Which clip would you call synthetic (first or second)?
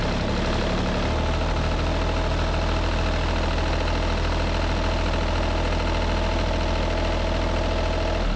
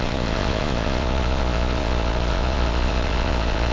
second